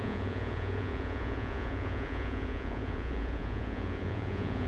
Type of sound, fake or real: fake